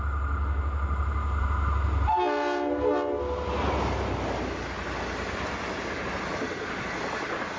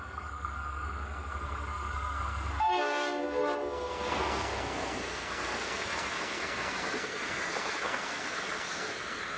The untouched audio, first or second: first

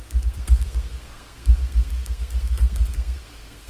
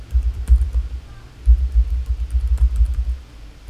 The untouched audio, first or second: second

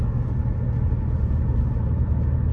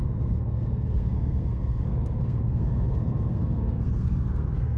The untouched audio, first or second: first